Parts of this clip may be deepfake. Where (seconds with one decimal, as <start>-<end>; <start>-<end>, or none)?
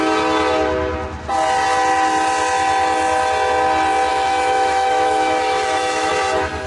4.1-6.1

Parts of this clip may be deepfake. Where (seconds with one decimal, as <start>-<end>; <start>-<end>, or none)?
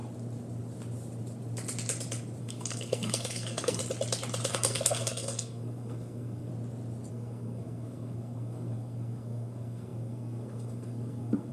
2.4-3.8; 4.5-6.5; 7.1-11.5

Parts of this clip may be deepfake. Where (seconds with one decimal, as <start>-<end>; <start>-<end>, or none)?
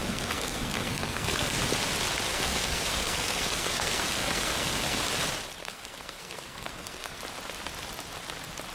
0.0-1.6; 2.3-5.0; 5.6-7.2